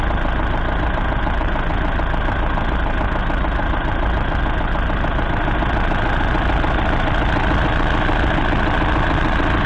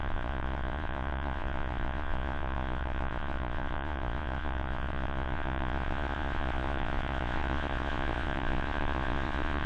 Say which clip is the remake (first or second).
second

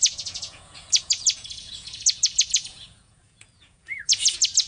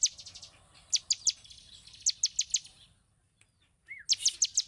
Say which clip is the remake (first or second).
first